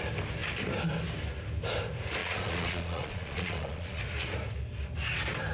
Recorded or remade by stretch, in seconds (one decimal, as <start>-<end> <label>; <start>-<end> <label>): 0.0-2.2 recorded; 2.2-4.0 remade; 4.0-5.5 recorded